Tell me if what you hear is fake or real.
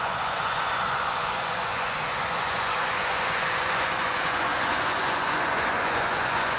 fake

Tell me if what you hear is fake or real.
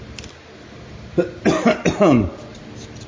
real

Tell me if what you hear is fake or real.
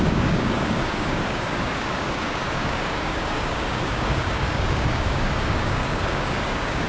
fake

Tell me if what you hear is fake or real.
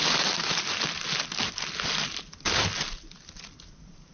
real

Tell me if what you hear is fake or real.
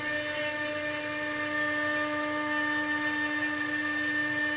real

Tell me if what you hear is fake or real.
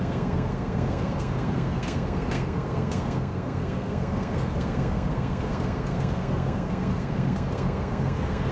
fake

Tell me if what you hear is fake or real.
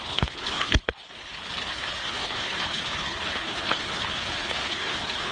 fake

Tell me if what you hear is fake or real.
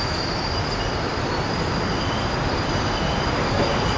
real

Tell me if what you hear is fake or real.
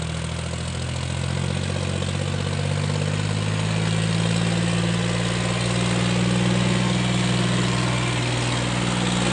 real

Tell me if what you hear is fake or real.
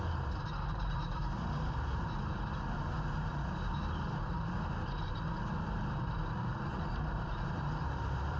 fake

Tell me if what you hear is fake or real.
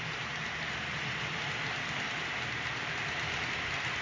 real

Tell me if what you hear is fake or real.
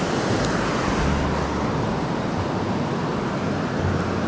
real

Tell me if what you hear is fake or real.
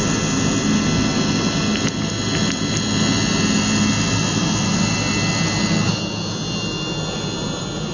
real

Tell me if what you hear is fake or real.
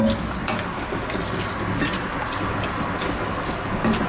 real